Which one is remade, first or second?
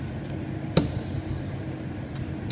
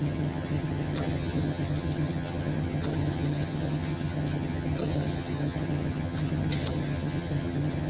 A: second